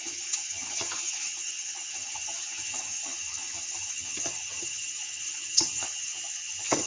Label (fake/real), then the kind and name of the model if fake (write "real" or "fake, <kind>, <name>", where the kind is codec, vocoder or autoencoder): fake, vocoder, HiFi-GAN